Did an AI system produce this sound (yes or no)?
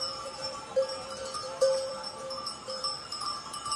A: yes